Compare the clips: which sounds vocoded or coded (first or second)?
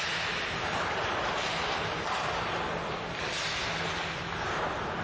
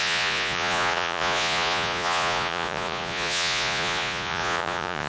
second